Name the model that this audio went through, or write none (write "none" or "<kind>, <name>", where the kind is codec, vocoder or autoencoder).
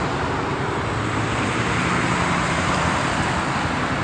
vocoder, BigVGAN v2